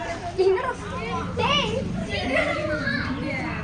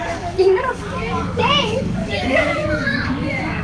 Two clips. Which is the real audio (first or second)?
first